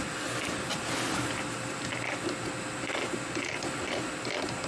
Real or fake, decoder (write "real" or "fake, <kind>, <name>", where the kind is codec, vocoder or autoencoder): real